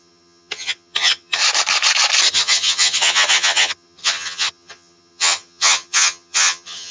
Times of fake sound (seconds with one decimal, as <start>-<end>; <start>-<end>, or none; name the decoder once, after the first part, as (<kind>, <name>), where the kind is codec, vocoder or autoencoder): 0.0-1.4 (vocoder, HiFi-GAN); 2.3-6.9

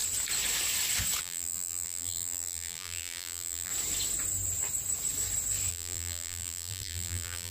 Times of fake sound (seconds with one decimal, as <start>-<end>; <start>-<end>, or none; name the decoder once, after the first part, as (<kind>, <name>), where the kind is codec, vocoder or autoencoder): 1.2-3.7 (vocoder, BigVGAN v2); 5.7-7.5